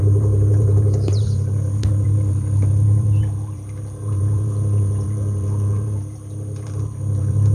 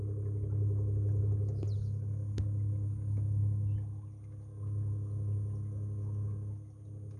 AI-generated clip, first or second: first